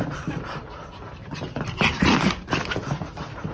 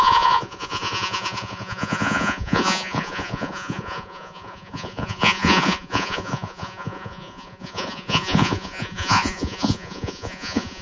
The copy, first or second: second